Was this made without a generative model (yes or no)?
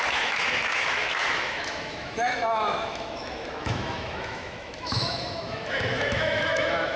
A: no